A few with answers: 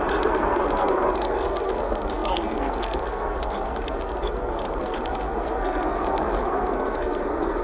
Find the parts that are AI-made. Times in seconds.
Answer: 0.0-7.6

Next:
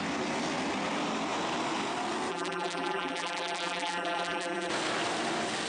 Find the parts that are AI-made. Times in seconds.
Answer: 2.3-4.7

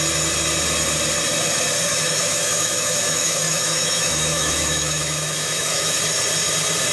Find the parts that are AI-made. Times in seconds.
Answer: 1.9-6.0

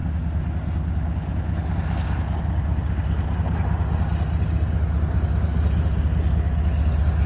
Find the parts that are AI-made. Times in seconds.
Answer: none

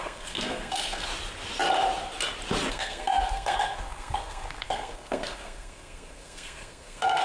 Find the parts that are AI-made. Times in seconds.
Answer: 0.0-1.1; 2.7-7.2

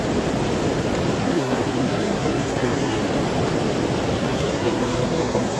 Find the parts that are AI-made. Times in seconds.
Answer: 1.2-3.0; 4.2-5.6

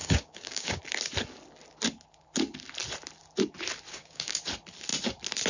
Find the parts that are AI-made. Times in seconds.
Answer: 0.0-0.8; 3.9-4.4